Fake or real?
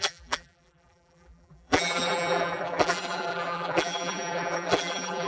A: fake